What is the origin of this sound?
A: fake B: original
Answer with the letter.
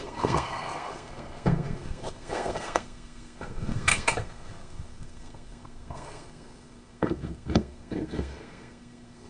A